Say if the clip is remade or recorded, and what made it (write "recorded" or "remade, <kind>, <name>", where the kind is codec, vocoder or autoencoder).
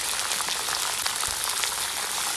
recorded